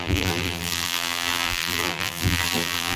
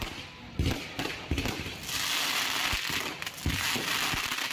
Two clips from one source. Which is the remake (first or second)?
first